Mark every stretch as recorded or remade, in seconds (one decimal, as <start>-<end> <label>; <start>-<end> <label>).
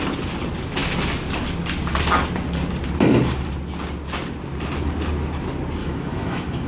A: 0.0-5.8 recorded; 5.8-6.7 remade